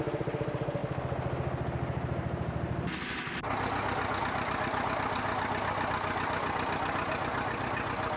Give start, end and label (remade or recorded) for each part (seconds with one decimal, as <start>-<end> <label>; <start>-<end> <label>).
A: 0.0-8.2 recorded